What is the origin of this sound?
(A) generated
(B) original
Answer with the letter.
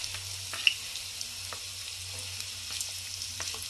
B